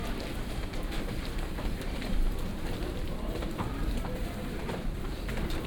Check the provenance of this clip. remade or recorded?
remade